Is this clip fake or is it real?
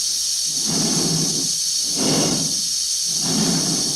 real